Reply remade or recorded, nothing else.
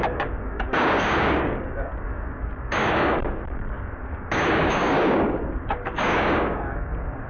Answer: remade